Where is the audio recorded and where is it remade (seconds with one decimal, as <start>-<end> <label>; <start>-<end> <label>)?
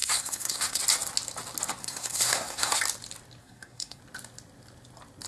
0.0-0.8 remade; 0.8-1.8 recorded; 1.8-2.8 remade; 2.8-3.4 recorded; 3.4-4.0 remade; 4.0-5.3 recorded